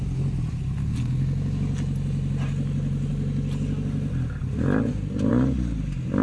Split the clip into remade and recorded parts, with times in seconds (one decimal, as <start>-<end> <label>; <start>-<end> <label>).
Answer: 0.0-6.2 recorded

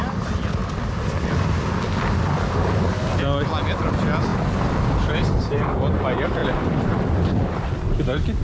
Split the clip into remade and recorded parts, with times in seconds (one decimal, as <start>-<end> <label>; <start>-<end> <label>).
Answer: 0.0-0.6 recorded; 0.6-1.6 remade; 1.6-4.3 recorded; 4.3-5.4 remade; 5.4-6.4 recorded; 6.4-7.6 remade; 7.6-8.4 recorded

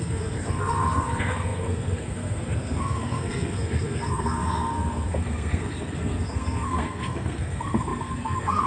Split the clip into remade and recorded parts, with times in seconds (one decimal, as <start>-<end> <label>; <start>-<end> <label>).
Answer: 0.0-8.7 remade

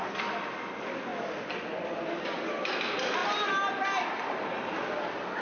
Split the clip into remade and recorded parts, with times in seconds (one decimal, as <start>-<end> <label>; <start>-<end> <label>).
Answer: 0.0-5.4 recorded

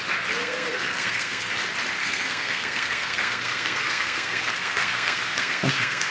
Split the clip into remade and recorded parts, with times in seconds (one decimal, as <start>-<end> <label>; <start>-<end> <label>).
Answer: 0.0-0.4 recorded; 0.4-1.5 remade; 1.5-2.0 recorded; 2.0-6.1 remade

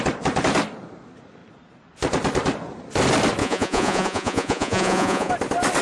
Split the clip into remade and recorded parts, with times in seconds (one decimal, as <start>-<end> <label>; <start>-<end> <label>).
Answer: 0.0-3.4 recorded; 3.4-5.3 remade; 5.3-5.8 recorded